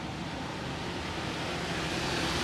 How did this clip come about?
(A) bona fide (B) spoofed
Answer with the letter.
A